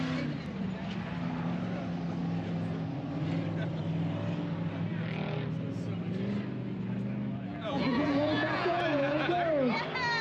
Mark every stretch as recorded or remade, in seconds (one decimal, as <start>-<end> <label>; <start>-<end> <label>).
0.0-7.5 recorded; 7.5-9.3 remade; 9.3-10.2 recorded